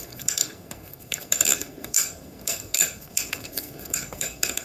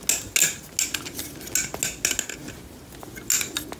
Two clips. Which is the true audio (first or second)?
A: second